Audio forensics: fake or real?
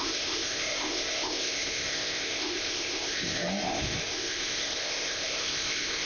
fake